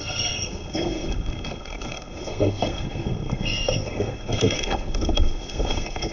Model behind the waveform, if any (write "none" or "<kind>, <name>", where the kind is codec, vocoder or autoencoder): codec, SNAC